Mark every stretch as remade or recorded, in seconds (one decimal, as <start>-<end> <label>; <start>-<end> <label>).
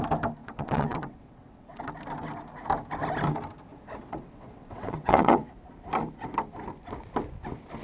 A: 0.0-0.4 recorded; 0.4-1.9 remade; 1.9-3.7 recorded; 3.7-5.5 remade; 5.5-7.8 recorded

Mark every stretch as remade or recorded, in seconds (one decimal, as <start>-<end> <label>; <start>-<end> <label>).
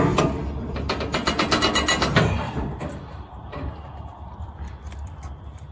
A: 0.0-1.1 recorded; 1.1-4.1 remade; 4.1-5.7 recorded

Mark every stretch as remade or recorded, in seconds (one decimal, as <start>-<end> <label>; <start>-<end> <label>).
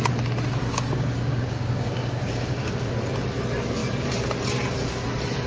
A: 0.0-0.6 recorded; 0.6-2.9 remade; 2.9-5.5 recorded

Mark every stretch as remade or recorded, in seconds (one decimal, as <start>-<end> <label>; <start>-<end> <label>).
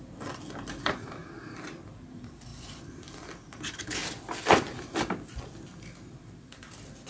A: 0.0-1.2 remade; 1.2-2.1 recorded; 2.1-4.0 remade; 4.0-6.1 recorded; 6.1-7.1 remade